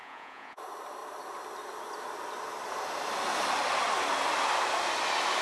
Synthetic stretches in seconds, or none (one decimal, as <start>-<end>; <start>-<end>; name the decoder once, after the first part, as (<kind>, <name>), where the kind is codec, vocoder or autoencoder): 0.0-0.6 (vocoder, Vocos)